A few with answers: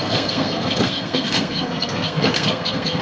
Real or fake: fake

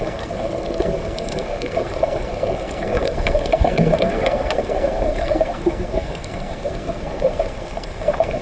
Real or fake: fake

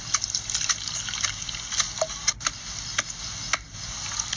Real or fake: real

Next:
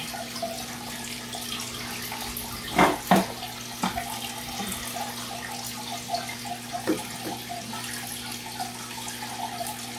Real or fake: real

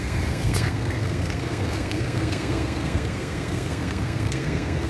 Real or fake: fake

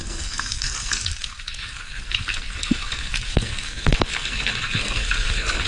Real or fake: fake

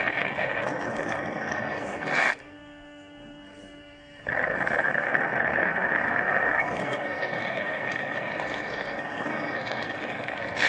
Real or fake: fake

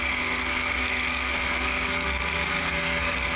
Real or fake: fake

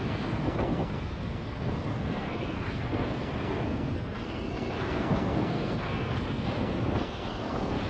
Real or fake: fake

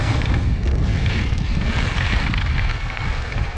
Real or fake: fake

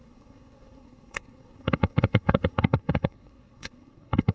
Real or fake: fake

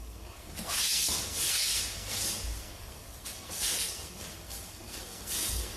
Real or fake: fake